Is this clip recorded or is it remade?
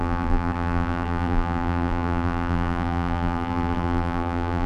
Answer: remade